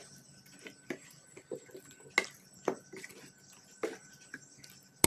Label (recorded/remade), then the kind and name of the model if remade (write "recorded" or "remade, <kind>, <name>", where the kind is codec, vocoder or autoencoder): recorded